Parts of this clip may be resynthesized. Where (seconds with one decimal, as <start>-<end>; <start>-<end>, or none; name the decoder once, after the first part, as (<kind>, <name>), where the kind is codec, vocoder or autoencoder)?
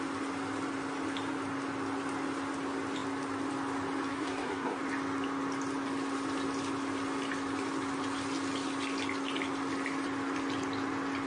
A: 4.1-4.8 (codec, SNAC)